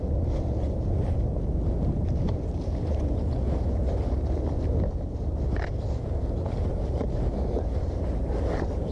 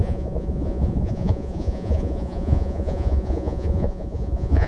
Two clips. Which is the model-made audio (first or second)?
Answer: second